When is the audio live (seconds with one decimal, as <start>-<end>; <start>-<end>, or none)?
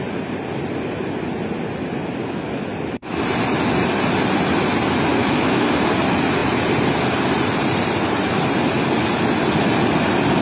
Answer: 0.0-5.1; 5.7-10.4